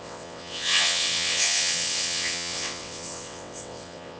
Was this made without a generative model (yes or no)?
no